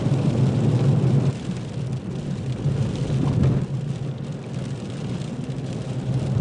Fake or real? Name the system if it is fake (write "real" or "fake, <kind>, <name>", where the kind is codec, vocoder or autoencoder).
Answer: real